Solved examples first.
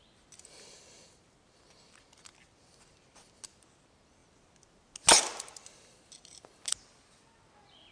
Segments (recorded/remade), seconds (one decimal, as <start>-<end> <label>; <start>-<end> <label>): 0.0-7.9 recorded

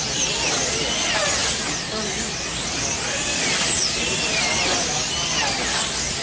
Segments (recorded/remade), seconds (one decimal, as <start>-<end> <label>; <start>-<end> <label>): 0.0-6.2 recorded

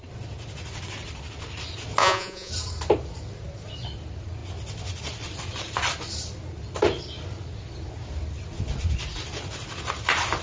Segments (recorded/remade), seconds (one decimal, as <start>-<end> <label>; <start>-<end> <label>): 0.0-2.0 recorded; 2.0-2.5 remade; 2.5-10.4 recorded

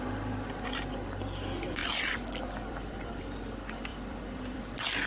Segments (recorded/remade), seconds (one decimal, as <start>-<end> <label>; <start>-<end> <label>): 0.0-1.8 recorded; 1.8-3.2 remade; 3.2-3.9 recorded; 3.9-4.6 remade; 4.6-5.1 recorded